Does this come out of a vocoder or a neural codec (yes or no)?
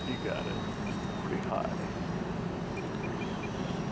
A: no